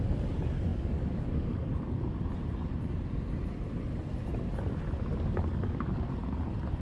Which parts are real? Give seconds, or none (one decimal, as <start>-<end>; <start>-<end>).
0.0-0.7; 1.7-5.1; 6.1-6.8

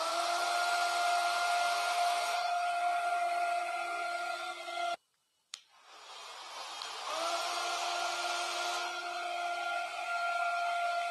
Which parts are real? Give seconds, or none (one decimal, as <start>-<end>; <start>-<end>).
0.0-2.3; 3.6-6.2; 6.7-11.1

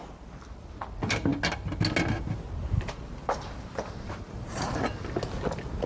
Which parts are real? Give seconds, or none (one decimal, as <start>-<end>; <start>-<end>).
0.0-2.6; 4.8-5.9

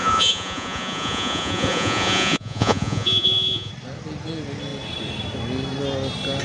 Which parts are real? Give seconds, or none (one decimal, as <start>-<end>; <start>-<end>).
3.7-6.4